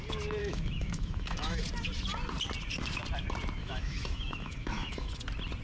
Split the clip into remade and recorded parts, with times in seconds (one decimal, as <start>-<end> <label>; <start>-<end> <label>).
0.0-0.4 recorded; 0.4-1.6 remade; 1.6-3.6 recorded; 3.6-5.1 remade; 5.1-5.6 recorded